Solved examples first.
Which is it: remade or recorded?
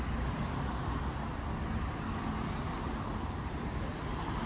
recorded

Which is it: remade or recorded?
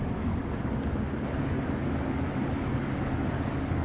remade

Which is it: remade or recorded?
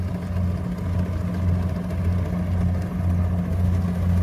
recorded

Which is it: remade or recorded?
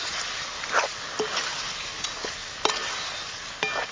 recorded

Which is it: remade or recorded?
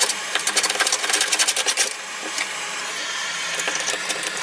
remade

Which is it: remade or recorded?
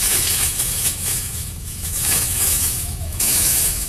remade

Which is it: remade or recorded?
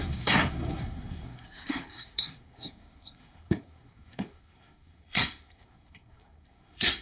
remade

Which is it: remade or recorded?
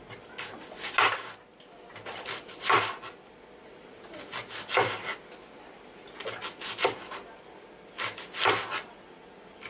recorded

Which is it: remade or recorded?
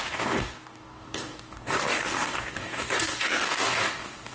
remade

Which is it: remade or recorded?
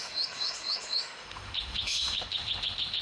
remade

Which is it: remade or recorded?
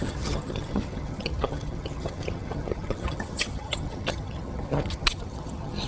remade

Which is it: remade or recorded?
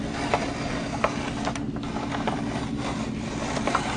recorded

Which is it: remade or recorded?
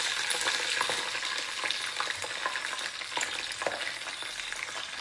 recorded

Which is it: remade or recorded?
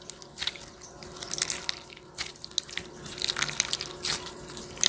recorded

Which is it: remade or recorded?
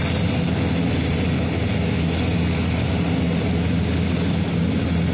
recorded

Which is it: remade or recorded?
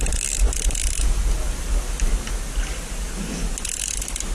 recorded